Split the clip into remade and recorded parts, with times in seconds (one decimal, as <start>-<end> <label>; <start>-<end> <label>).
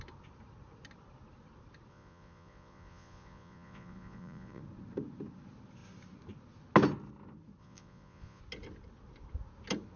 0.0-1.9 recorded; 1.9-4.6 remade; 4.6-7.6 recorded; 7.6-8.4 remade; 8.4-10.0 recorded